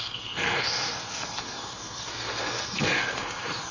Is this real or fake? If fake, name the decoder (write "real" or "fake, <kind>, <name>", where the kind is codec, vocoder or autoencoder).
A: fake, codec, SNAC